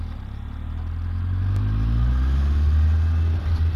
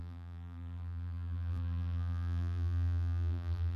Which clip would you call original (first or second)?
first